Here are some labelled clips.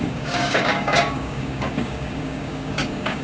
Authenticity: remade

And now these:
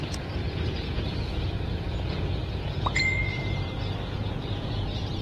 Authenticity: remade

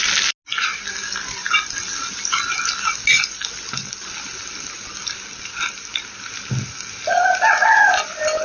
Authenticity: recorded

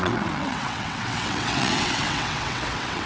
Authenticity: remade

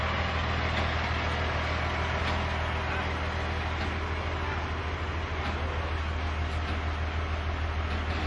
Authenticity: recorded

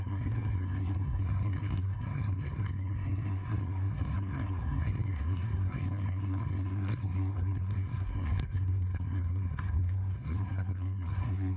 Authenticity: remade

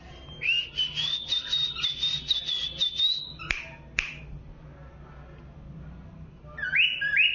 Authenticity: recorded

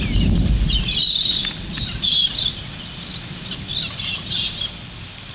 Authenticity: recorded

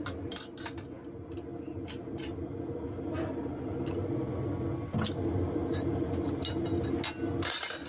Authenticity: recorded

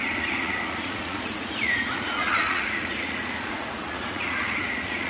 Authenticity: remade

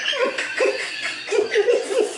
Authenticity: remade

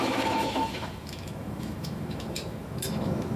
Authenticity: remade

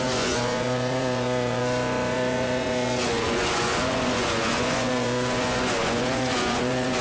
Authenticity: remade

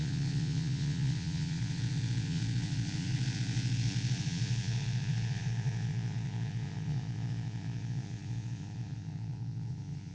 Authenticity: remade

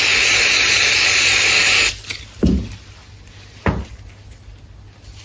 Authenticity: recorded